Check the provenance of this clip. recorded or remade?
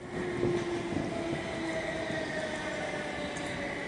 recorded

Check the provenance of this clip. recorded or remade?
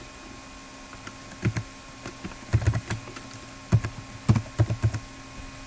recorded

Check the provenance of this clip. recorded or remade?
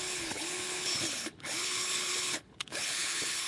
remade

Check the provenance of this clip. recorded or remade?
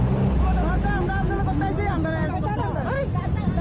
recorded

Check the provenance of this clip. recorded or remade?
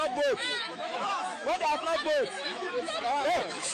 remade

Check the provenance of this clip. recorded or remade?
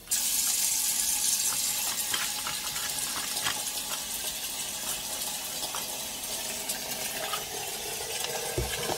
recorded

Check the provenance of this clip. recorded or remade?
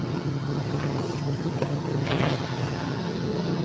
remade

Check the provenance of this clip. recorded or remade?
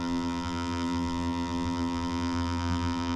remade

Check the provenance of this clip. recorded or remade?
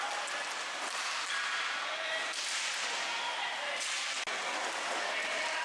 recorded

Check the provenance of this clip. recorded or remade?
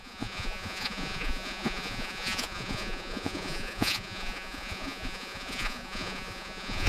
remade